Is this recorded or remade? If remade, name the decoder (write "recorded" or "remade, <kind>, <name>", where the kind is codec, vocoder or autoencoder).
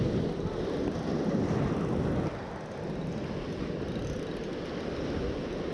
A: recorded